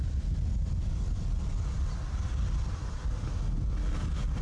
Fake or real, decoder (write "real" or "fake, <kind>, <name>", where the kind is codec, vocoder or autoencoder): real